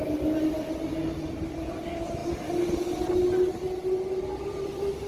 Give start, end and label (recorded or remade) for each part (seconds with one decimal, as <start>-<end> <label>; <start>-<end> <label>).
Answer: 0.0-5.1 recorded

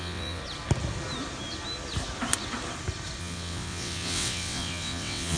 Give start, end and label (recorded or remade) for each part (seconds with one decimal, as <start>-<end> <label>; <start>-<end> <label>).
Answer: 0.0-0.4 remade; 0.4-3.2 recorded; 3.2-5.4 remade

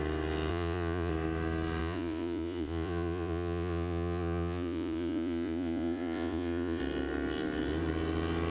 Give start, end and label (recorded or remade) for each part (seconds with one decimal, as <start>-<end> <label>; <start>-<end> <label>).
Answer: 0.0-0.5 recorded; 0.5-1.1 remade; 1.1-1.8 recorded; 1.8-6.8 remade; 6.8-8.5 recorded

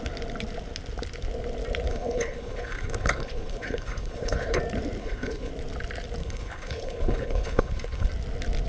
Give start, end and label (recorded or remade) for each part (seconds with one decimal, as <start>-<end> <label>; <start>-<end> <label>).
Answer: 0.0-1.9 recorded; 1.9-4.6 remade; 4.6-5.0 recorded; 5.0-5.5 remade; 5.5-6.2 recorded; 6.2-8.1 remade; 8.1-8.7 recorded

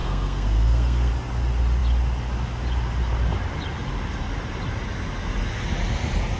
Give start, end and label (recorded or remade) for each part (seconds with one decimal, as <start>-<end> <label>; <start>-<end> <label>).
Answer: 0.0-1.1 remade; 1.1-6.4 recorded